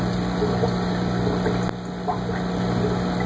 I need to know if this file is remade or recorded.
recorded